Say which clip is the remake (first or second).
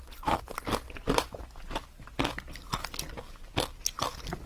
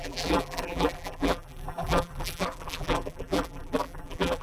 second